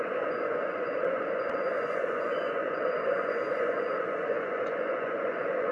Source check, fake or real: fake